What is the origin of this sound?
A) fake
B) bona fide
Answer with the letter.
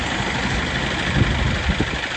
B